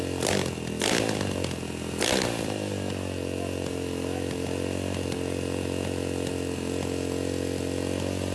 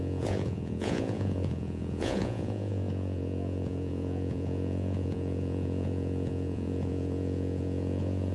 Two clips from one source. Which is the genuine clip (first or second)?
first